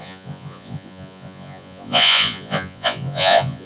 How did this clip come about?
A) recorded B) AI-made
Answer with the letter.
B